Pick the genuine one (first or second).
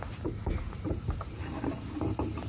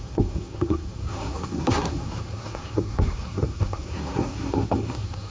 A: first